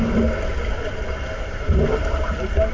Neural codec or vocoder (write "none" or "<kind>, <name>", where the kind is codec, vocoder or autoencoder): none